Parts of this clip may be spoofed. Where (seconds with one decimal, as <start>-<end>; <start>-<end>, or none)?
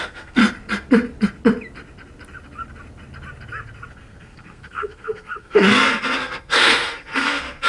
0.0-0.4; 3.9-7.7